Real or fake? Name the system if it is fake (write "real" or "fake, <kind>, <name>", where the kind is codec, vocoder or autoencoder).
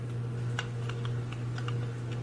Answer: real